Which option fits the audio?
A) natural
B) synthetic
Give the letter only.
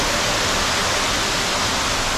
A